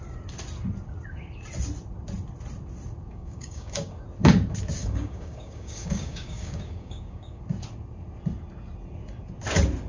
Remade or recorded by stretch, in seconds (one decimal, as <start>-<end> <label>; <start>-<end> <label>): 0.0-3.1 recorded; 3.1-4.0 remade; 4.0-4.8 recorded; 4.8-7.4 remade; 7.4-9.9 recorded